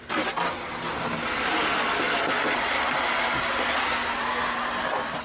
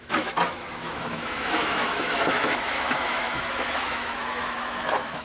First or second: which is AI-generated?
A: second